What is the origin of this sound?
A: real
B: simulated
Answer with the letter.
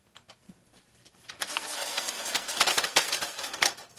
B